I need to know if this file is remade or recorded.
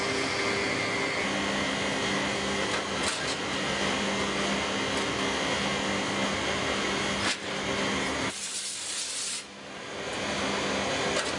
recorded